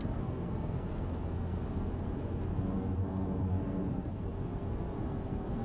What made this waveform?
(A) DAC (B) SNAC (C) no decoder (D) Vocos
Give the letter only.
B